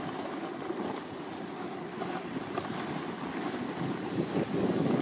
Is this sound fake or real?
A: real